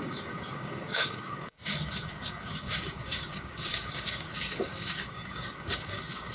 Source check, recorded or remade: remade